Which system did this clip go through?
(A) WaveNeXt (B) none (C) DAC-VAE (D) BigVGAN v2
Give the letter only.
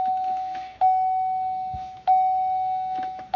C